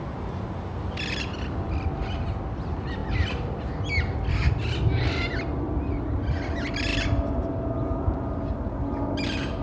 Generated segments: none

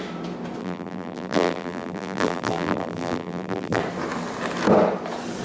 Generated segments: 0.6-3.8

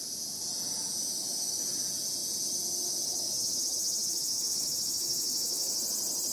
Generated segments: 1.0-1.7; 3.1-5.7

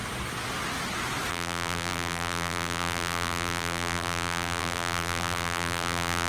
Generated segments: 1.3-6.3

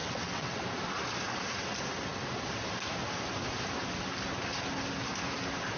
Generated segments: 0.0-0.6